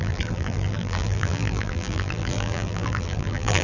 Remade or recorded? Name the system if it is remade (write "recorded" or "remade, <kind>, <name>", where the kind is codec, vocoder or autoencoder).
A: remade, vocoder, BigVGAN v2